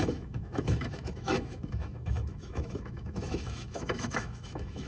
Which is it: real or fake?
fake